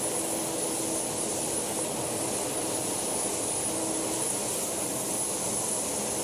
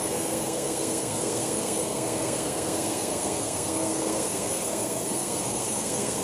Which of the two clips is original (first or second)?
first